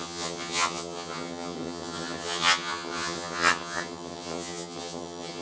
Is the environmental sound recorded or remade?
remade